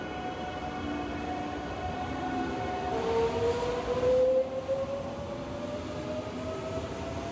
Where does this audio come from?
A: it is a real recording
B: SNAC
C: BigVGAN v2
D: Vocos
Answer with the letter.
A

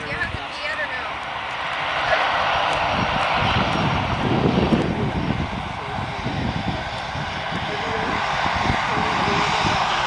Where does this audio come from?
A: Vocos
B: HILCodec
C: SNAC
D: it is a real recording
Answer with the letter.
D